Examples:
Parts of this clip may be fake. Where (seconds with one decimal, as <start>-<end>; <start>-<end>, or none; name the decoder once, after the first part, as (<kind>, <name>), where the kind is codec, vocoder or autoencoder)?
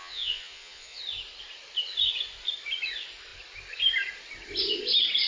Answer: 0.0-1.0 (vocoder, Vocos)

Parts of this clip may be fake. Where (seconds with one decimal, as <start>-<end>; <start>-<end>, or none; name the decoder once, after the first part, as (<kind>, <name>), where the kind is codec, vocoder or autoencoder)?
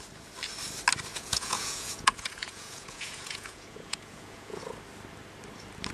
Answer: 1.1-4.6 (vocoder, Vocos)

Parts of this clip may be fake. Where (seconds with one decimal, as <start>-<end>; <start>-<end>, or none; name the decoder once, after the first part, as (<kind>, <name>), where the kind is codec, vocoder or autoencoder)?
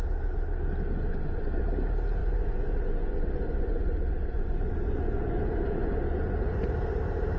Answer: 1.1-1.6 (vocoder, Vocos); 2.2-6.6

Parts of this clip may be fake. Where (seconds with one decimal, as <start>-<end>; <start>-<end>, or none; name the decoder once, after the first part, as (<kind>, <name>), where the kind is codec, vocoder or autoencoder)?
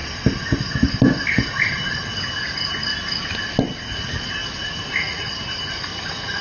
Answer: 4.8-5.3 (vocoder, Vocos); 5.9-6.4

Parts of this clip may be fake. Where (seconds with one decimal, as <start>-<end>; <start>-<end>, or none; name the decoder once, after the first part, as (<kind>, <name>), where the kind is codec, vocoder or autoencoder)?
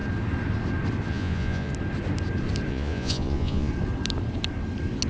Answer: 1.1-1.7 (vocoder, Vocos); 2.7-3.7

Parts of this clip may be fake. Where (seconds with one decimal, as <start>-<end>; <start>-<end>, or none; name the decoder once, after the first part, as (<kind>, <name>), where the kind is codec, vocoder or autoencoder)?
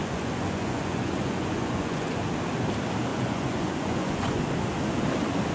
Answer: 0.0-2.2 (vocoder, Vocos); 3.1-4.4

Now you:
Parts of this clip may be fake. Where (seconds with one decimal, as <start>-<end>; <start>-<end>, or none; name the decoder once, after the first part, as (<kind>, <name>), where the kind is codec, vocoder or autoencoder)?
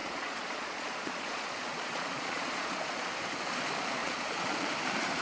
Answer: 0.0-3.1 (vocoder, Vocos); 4.0-4.7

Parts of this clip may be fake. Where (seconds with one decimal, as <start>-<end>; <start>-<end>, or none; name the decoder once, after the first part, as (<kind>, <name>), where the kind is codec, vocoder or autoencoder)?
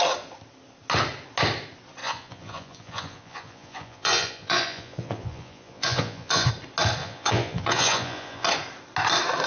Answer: 2.0-6.5 (vocoder, Vocos); 7.0-8.5